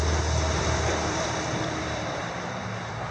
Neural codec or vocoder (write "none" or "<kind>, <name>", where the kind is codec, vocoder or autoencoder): vocoder, BigVGAN v2